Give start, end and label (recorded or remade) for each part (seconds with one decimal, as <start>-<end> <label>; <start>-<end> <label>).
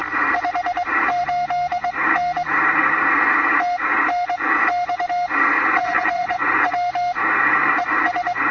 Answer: 0.0-5.7 recorded; 5.7-6.7 remade; 6.7-8.5 recorded